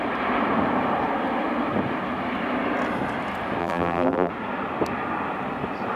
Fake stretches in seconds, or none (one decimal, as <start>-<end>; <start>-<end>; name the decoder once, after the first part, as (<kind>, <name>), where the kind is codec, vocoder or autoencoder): 3.6-4.3 (vocoder, BigVGAN v2)